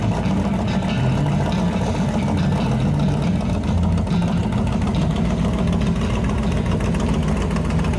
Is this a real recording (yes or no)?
yes